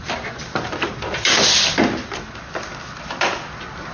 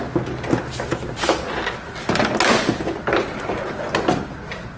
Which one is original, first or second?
second